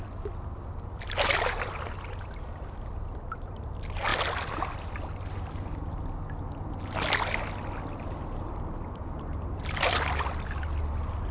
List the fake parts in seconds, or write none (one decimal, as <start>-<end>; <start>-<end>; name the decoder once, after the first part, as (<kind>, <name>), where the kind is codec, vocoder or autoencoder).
none